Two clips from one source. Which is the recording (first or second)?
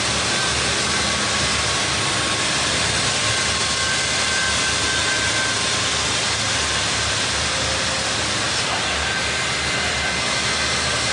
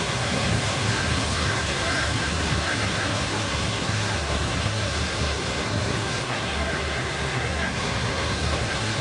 first